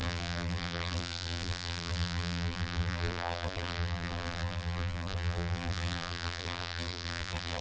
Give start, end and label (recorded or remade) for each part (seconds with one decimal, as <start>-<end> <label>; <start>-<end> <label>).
0.0-7.6 remade